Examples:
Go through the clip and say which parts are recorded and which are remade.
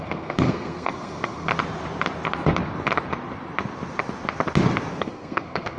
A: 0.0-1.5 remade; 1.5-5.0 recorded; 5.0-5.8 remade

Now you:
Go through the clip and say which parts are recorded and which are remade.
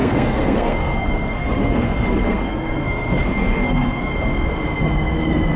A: 0.0-4.1 remade; 4.1-5.6 recorded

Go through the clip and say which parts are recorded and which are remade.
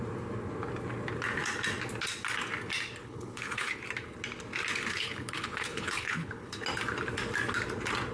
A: 0.0-3.0 recorded; 3.0-3.8 remade; 3.8-4.9 recorded; 4.9-6.6 remade; 6.6-8.1 recorded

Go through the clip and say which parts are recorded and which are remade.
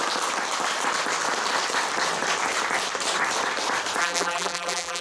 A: 0.0-4.0 recorded; 4.0-5.0 remade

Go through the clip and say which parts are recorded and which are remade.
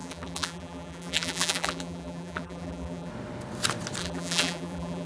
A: 0.0-3.1 remade; 3.1-4.0 recorded; 4.0-5.1 remade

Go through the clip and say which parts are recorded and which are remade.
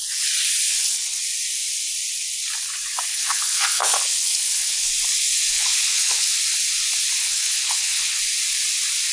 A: 0.0-0.7 recorded; 0.7-1.2 remade; 1.2-3.1 recorded; 3.1-4.9 remade; 4.9-5.5 recorded; 5.5-6.4 remade; 6.4-7.2 recorded; 7.2-8.2 remade; 8.2-9.1 recorded